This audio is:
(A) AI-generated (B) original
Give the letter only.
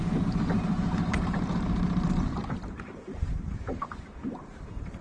A